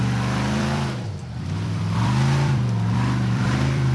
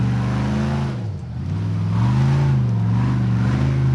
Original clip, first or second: second